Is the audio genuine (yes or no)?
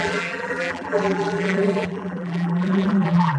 no